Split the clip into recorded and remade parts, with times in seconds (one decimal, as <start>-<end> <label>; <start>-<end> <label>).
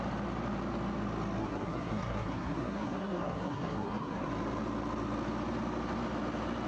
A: 0.0-1.4 recorded; 1.4-4.3 remade; 4.3-6.7 recorded